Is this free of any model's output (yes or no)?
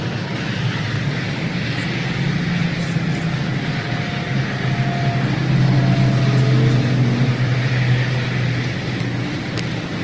yes